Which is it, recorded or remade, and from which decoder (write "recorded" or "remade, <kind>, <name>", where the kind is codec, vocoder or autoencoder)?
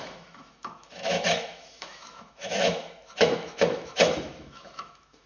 remade, autoencoder, DAC-VAE